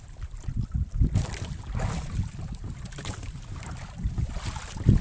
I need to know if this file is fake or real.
real